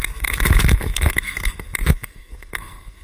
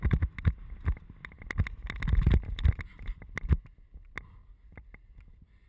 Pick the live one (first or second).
second